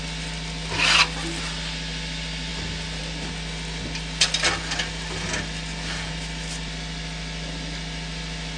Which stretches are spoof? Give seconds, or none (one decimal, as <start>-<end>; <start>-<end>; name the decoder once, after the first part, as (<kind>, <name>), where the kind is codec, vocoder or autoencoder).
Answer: none